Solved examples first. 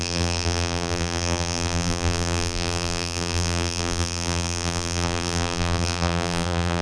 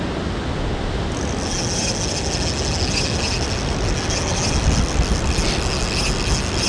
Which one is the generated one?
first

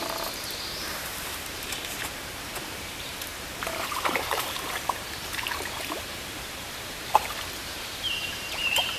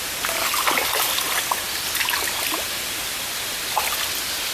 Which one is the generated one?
first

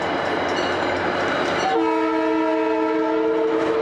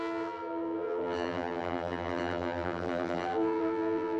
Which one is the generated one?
second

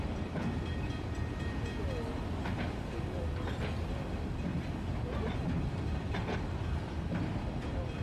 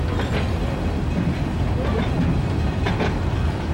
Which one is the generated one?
first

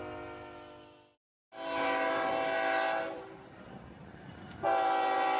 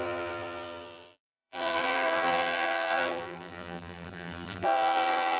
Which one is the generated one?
second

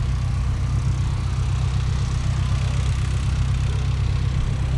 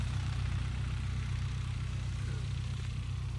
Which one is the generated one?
second